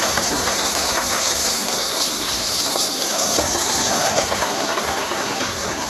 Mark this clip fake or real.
fake